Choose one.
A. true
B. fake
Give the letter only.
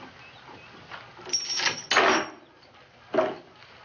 A